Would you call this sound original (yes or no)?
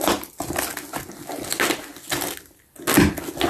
yes